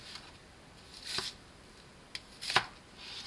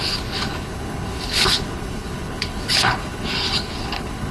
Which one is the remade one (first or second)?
second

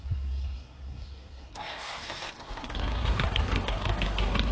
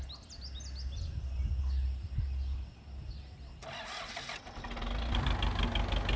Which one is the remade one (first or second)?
first